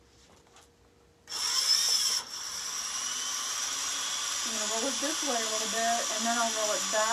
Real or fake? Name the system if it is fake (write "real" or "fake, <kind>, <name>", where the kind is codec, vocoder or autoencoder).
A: real